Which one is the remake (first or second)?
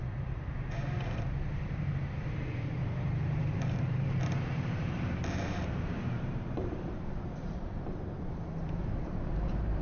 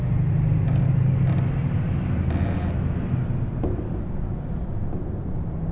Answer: first